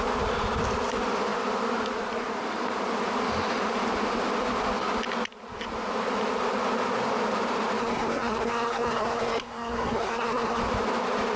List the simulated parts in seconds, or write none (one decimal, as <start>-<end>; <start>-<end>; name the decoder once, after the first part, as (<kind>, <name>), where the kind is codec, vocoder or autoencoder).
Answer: 7.8-10.6 (codec, SNAC)